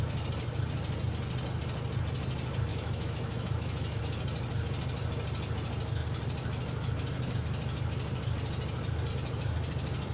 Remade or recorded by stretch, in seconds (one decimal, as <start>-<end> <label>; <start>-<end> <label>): 0.0-2.7 recorded; 2.7-4.0 remade; 4.0-10.1 recorded